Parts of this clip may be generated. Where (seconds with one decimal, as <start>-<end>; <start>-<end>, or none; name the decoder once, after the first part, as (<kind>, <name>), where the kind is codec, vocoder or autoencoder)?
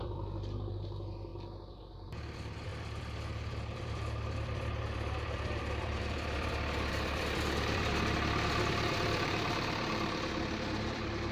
0.0-1.3 (vocoder, BigVGAN v2); 1.8-11.3